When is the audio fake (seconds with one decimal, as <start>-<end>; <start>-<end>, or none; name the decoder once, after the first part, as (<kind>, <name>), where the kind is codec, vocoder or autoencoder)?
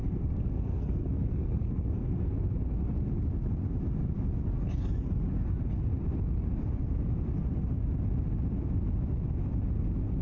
0.0-2.3 (codec, SNAC)